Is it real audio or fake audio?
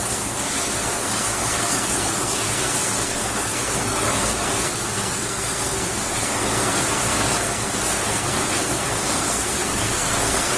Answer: fake